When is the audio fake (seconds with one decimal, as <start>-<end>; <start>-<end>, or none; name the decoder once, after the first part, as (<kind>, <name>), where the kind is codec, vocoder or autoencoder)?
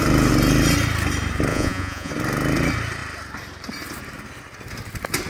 1.5-2.1 (vocoder, Vocos)